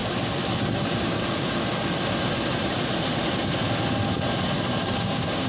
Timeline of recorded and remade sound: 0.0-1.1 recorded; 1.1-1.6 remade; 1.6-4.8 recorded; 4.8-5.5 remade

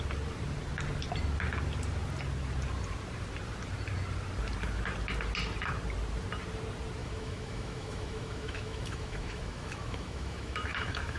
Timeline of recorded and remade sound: 0.0-7.0 recorded; 7.0-11.2 remade

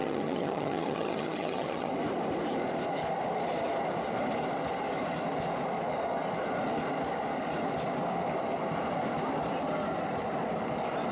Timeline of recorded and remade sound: 0.0-1.9 remade; 1.9-11.1 recorded

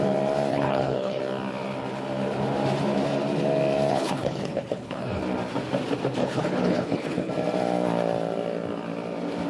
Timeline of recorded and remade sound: 0.0-0.5 recorded; 0.5-1.2 remade; 1.2-3.9 recorded; 3.9-5.2 remade; 5.2-6.2 recorded; 6.2-7.3 remade; 7.3-9.5 recorded

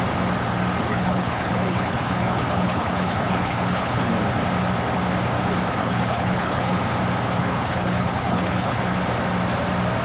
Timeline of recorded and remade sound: 0.0-0.9 recorded; 0.9-4.1 remade; 4.1-5.8 recorded; 5.8-6.8 remade; 6.8-7.4 recorded; 7.4-8.8 remade; 8.8-10.0 recorded

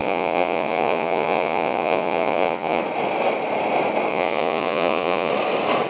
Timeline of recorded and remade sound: 0.0-2.8 remade; 2.8-4.1 recorded; 4.1-5.3 remade; 5.3-5.9 recorded